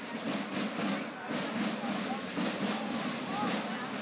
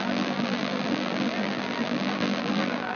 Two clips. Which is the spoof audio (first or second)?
second